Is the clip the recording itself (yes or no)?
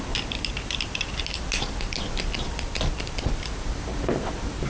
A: yes